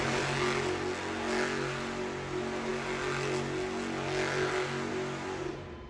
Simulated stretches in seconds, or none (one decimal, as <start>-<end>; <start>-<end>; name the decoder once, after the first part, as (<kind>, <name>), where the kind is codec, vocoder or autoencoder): none